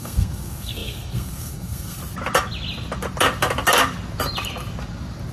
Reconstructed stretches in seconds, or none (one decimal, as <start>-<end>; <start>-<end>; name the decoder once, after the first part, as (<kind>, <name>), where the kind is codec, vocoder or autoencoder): 0.0-2.0 (codec, SNAC)